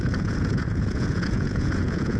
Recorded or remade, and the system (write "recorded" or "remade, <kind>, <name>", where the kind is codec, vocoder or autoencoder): remade, vocoder, Vocos